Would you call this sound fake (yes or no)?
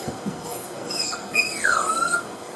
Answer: yes